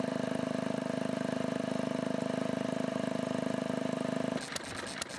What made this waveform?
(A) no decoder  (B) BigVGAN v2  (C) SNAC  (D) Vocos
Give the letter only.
A